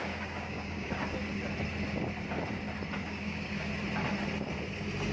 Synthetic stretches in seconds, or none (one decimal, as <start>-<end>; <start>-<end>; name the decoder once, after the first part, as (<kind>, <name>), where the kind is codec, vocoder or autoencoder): 0.0-0.9 (codec, DAC); 3.0-3.7